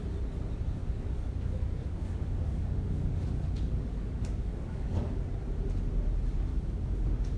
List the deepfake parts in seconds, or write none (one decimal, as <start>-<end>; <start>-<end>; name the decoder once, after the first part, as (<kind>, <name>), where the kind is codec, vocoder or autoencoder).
0.8-5.2 (codec, DAC); 6.5-7.4